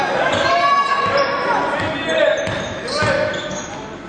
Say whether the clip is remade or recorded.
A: remade